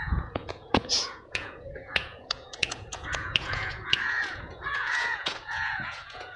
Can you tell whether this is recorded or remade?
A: remade